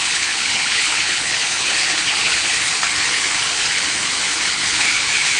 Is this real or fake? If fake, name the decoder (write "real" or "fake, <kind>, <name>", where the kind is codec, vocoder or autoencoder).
fake, codec, HILCodec